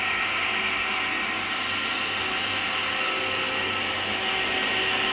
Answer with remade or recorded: recorded